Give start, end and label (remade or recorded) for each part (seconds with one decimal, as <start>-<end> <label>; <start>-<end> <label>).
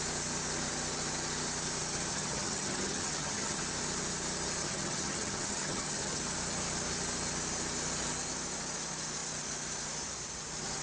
0.0-2.1 recorded; 2.1-3.6 remade; 3.6-4.6 recorded; 4.6-6.2 remade; 6.2-10.8 recorded